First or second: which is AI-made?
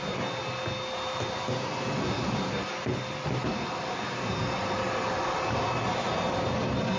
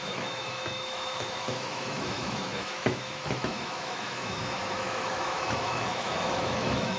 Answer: second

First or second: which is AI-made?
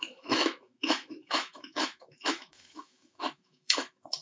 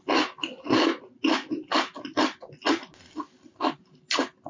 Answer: first